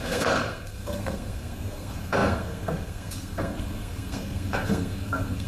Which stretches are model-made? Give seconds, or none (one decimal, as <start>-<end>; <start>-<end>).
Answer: 0.0-5.5